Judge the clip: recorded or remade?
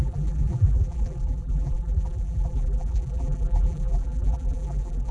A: remade